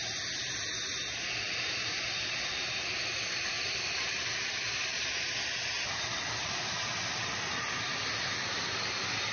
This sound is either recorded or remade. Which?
recorded